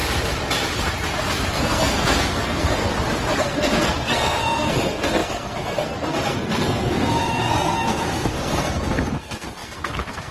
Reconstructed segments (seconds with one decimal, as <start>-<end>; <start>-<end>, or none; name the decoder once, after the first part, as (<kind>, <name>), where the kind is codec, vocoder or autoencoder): 1.5-2.9 (codec, SNAC); 3.4-10.3